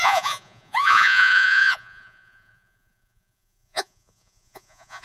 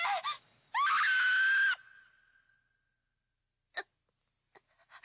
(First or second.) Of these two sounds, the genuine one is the second